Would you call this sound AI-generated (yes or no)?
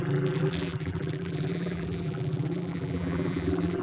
yes